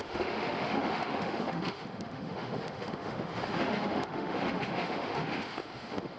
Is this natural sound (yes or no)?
no